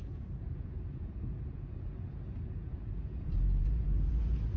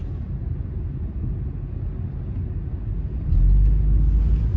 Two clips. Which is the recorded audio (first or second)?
second